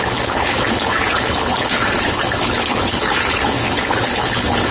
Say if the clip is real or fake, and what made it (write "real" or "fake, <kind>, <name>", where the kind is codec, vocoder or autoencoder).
fake, codec, HILCodec